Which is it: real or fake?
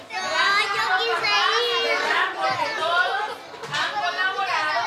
real